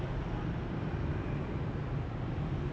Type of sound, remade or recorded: recorded